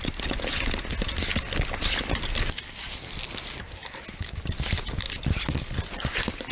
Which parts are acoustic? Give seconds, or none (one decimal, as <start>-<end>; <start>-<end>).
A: 0.0-6.5